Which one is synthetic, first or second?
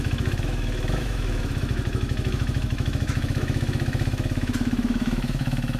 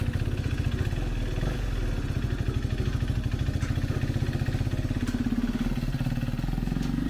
first